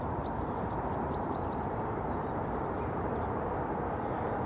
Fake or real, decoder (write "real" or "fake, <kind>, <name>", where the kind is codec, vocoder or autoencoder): fake, vocoder, BigVGAN v2